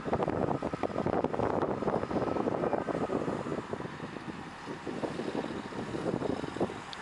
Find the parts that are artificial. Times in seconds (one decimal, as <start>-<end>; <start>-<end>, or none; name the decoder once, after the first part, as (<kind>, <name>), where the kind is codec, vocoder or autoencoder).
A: none